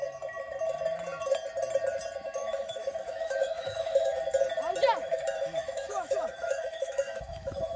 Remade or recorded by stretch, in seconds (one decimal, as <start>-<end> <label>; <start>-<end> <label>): 0.0-2.4 recorded; 2.4-4.2 remade; 4.2-5.0 recorded; 5.0-7.8 remade